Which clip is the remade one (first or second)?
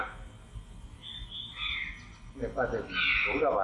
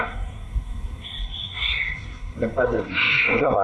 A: second